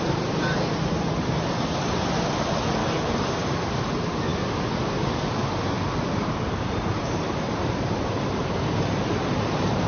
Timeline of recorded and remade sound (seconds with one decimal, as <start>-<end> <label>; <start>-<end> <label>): 0.0-2.8 remade; 2.8-3.3 recorded; 3.3-4.3 remade; 4.3-5.0 recorded; 5.0-5.4 remade; 5.4-6.0 recorded; 6.0-9.9 remade